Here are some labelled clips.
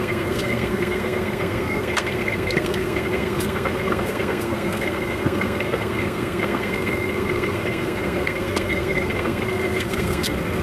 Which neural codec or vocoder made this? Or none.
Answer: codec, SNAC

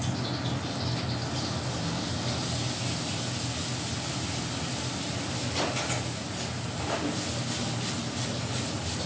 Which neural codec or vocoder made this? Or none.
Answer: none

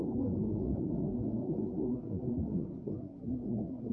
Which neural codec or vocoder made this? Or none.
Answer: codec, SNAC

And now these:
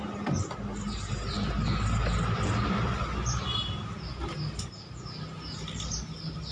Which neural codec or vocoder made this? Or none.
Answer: none